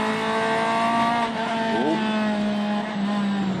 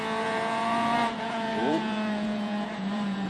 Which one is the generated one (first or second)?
second